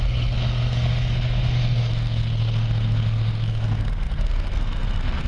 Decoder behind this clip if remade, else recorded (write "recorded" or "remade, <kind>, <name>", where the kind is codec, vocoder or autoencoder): remade, codec, SNAC